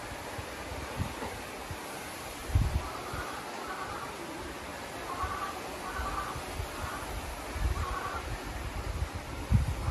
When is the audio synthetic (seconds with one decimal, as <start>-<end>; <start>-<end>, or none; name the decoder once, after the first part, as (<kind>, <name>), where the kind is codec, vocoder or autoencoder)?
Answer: 2.4-3.3 (vocoder, BigVGAN v2)